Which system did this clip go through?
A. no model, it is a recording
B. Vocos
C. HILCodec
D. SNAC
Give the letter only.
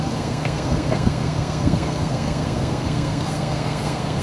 D